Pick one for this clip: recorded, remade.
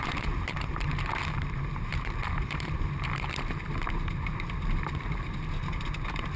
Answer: remade